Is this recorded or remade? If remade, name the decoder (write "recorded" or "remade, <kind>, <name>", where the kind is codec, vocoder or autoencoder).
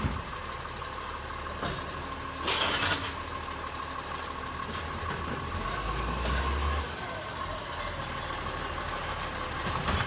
recorded